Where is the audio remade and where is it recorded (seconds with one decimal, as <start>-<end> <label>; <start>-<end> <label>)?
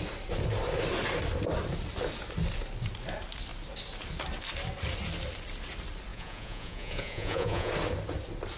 0.0-6.1 recorded; 6.1-7.7 remade; 7.7-8.6 recorded